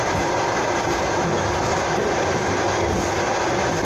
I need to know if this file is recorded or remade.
recorded